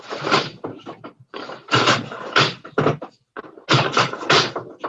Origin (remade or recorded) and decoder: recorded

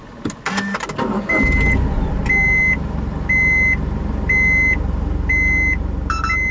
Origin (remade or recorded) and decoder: recorded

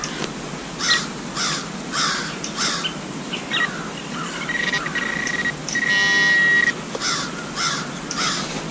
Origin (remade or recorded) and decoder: recorded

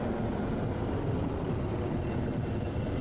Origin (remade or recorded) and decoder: recorded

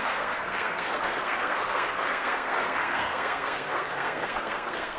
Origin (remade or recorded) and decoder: remade, codec, SNAC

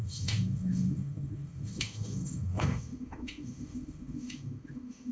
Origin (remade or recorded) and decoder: remade, autoencoder, DAC-VAE